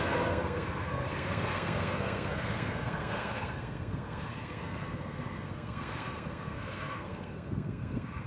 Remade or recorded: remade